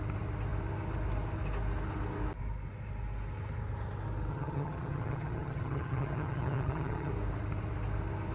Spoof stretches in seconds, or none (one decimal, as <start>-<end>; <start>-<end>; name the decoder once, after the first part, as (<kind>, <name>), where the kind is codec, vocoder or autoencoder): 4.3-7.1 (vocoder, HiFi-GAN)